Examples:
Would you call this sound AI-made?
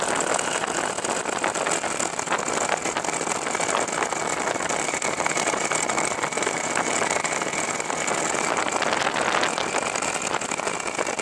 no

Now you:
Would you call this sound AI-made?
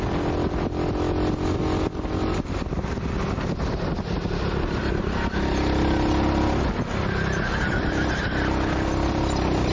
no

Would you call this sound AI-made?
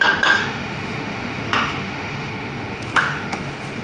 yes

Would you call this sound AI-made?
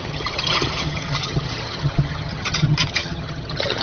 yes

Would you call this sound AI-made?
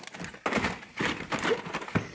no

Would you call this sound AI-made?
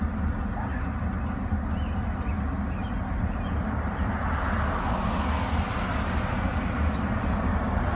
no